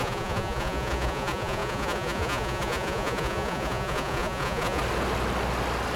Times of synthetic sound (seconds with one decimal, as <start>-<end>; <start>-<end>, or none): 0.0-4.8